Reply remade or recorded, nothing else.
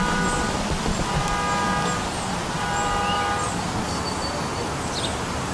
recorded